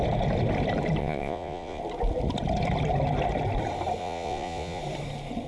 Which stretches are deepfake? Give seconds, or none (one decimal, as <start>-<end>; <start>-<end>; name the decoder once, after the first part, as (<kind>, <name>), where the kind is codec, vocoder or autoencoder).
1.0-1.8 (vocoder, Vocos); 4.0-4.8